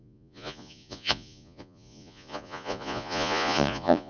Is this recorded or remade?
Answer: remade